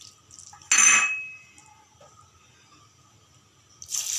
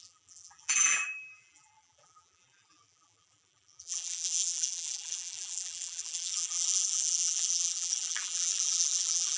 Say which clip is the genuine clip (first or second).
first